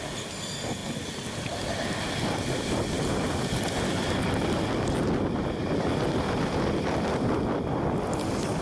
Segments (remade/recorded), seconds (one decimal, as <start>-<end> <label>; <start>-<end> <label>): 0.0-8.6 recorded